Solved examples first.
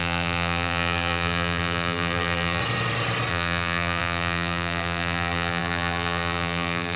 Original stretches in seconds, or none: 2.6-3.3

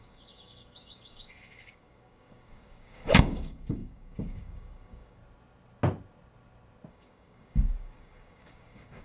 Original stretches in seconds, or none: 5.2-6.9

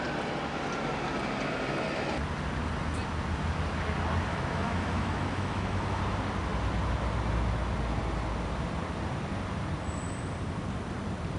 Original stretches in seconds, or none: 0.0-4.3; 6.0-11.4

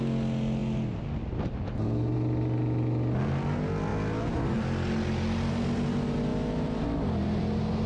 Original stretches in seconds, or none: 0.0-7.9

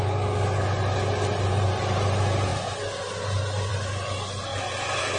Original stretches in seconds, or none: 0.0-5.2

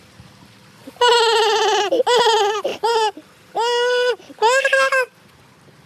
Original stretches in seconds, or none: 0.0-5.9